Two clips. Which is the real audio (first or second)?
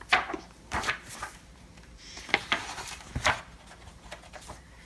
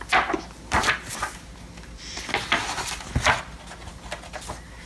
second